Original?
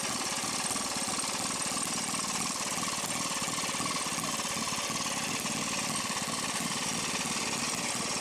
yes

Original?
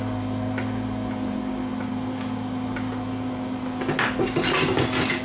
yes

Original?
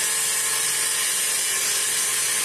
yes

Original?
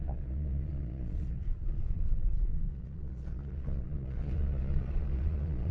no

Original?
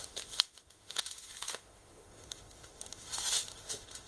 no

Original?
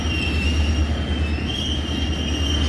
yes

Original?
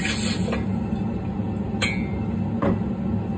yes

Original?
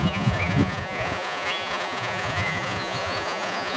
no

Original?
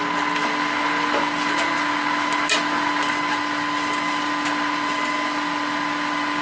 yes